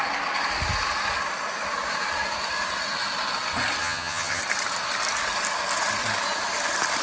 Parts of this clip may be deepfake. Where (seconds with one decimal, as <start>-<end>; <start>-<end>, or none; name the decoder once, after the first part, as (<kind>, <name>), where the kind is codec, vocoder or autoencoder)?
3.8-4.4 (vocoder, HiFi-GAN)